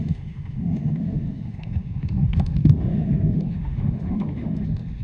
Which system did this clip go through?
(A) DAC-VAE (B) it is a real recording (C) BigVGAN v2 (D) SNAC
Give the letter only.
A